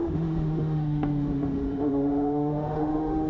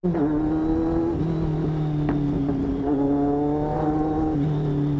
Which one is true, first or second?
second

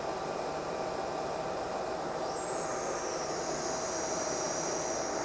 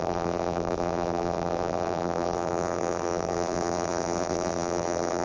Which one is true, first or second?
first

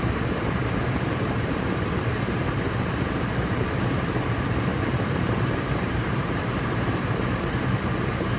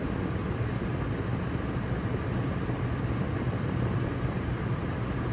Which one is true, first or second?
second